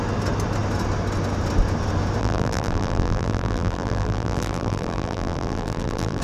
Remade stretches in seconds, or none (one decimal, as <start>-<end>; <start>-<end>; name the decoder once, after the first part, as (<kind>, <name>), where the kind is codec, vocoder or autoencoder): 2.2-6.2 (vocoder, BigVGAN v2)